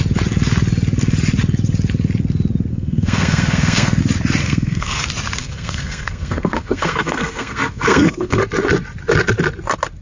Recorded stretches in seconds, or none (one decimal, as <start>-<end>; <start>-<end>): 0.0-2.7; 4.0-4.4; 5.0-5.4; 8.4-10.0